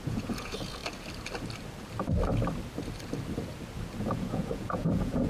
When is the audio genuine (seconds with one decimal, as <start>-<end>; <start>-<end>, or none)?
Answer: 0.8-4.0